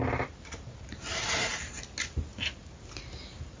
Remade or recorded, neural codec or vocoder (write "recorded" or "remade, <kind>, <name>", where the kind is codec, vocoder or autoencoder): recorded